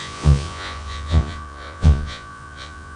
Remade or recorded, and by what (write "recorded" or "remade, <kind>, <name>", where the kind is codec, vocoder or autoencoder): remade, vocoder, Vocos